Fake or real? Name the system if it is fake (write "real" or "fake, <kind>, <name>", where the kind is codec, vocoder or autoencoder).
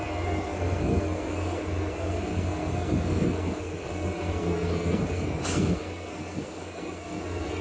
fake, codec, SNAC